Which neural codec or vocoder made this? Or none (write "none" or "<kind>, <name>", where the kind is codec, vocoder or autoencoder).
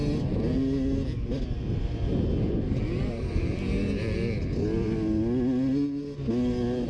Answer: none